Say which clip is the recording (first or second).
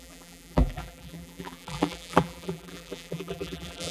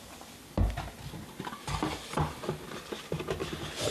second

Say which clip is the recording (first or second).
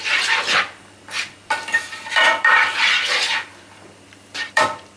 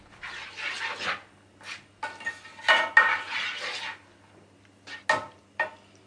second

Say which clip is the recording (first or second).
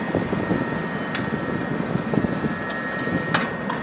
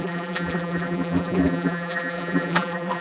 first